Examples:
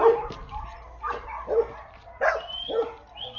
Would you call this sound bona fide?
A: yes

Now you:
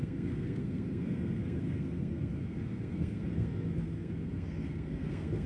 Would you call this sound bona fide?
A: no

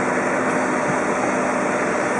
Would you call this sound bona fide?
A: yes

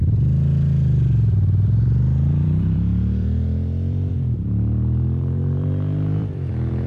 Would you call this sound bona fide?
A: no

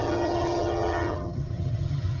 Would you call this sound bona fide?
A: no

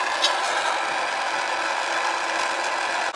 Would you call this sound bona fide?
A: yes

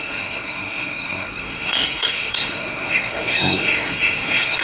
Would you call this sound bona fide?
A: no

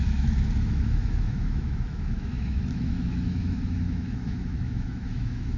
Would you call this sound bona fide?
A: no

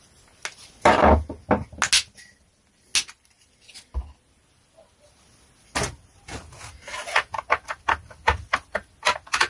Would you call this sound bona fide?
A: yes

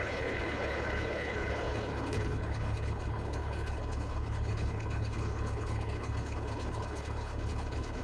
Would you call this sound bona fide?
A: no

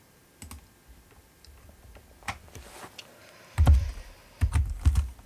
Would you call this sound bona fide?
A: yes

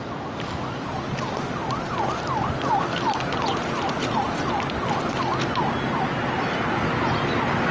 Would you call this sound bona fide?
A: yes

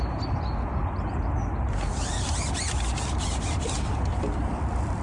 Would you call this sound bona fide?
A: yes